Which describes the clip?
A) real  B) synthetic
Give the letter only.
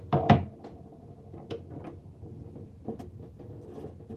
A